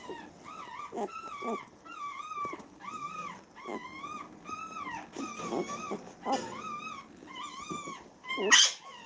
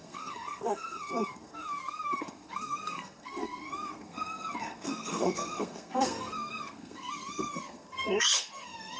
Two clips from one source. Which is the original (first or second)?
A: first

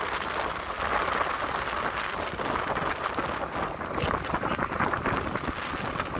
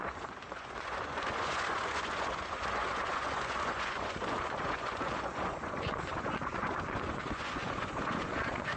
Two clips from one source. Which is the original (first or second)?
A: first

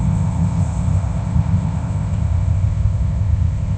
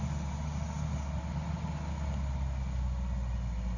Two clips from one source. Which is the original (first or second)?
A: second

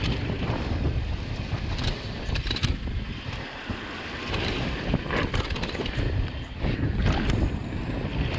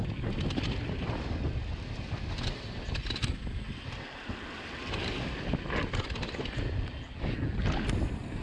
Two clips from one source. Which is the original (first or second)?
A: second